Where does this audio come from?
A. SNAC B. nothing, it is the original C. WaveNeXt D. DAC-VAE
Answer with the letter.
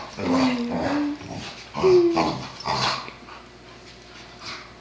B